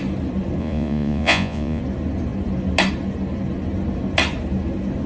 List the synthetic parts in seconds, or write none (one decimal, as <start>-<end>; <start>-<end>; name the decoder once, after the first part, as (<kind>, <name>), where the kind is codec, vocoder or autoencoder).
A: 0.6-1.8 (vocoder, Vocos)